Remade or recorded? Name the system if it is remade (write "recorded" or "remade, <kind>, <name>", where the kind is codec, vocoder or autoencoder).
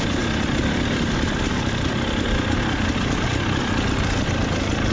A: recorded